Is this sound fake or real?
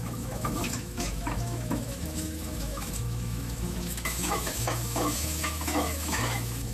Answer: fake